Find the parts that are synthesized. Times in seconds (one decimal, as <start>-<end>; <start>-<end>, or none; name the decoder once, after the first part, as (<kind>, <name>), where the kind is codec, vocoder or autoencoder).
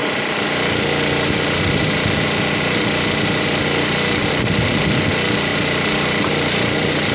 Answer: none